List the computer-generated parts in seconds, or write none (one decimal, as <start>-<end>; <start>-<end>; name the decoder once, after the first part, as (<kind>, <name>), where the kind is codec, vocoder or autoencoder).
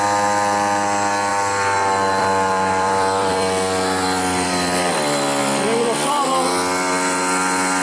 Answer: 1.3-5.4 (vocoder, BigVGAN v2)